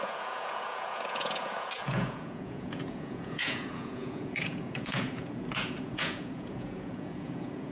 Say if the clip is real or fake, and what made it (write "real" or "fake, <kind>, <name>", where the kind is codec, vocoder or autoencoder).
fake, vocoder, Vocos